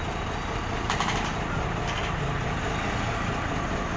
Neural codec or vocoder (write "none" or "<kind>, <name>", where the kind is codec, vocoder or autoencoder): none